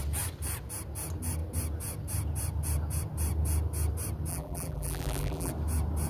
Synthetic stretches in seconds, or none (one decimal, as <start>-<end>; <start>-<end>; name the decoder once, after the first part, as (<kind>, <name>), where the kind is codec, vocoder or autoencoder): 4.3-5.5 (vocoder, BigVGAN v2)